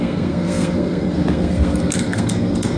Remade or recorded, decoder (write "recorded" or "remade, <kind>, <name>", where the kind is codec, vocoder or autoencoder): remade, codec, SNAC